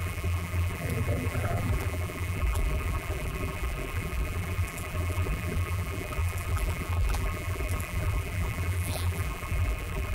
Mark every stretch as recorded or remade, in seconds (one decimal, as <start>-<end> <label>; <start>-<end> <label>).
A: 0.0-10.1 remade